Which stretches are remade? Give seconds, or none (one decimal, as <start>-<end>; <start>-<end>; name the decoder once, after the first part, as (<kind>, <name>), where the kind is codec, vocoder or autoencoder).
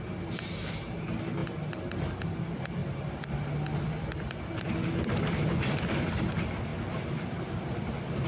none